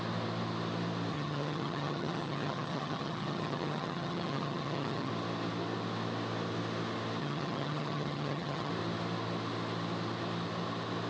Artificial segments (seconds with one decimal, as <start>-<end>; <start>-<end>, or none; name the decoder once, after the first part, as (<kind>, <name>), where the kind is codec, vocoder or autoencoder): 1.1-5.1 (vocoder, HiFi-GAN); 7.2-8.7